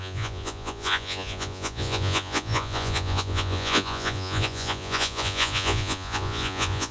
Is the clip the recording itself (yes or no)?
no